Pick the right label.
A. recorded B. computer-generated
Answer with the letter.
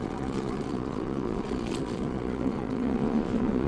B